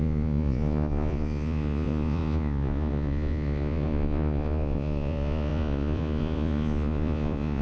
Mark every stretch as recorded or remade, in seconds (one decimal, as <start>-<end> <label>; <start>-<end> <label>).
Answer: 0.0-7.6 remade